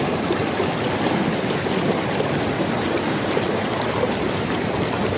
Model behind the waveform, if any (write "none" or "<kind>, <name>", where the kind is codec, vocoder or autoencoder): none